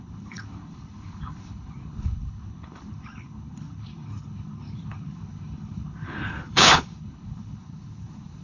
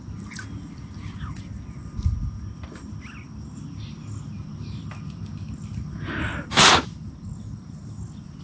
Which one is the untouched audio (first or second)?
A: second